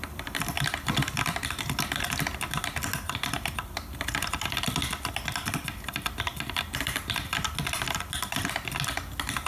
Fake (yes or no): no